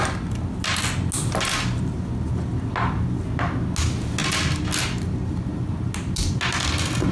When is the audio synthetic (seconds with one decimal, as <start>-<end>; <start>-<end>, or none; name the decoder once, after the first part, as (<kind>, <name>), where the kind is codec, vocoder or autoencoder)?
none

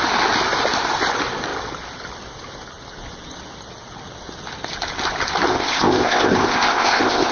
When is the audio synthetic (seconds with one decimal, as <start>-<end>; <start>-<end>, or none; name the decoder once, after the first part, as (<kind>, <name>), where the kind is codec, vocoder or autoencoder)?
5.5-7.3 (codec, ZipCodec)

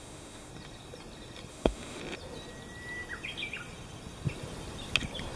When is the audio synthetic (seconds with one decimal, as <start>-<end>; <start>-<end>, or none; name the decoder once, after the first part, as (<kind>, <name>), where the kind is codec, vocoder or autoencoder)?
0.0-0.5 (autoencoder, DAC-VAE); 1.5-2.0

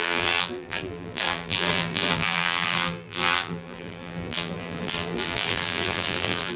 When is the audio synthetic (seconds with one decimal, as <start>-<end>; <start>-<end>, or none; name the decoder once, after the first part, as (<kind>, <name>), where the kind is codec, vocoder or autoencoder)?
0.0-6.6 (vocoder, BigVGAN v2)

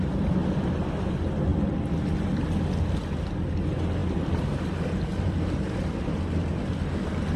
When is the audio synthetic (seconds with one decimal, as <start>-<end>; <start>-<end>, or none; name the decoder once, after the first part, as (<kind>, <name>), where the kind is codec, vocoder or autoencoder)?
5.1-6.0 (vocoder, BigVGAN v2)

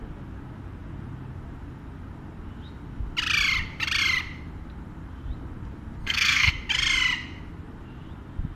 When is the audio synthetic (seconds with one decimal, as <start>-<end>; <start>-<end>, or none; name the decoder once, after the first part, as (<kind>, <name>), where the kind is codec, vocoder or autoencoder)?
6.0-6.5 (codec, SNAC)

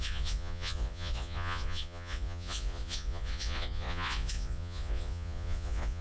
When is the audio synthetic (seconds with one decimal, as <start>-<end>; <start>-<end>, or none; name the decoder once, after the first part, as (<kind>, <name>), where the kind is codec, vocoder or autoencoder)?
0.0-6.0 (vocoder, Vocos)